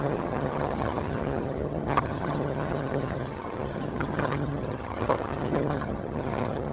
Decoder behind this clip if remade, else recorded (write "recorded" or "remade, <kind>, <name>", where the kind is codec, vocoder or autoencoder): remade, vocoder, HiFi-GAN